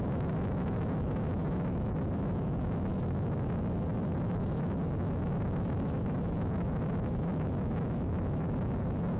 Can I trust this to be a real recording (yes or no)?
no